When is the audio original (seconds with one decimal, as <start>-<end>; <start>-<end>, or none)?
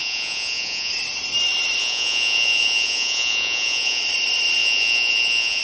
0.9-1.8; 4.0-4.6